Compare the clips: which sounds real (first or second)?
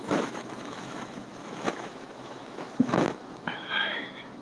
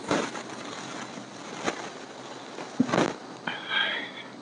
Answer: second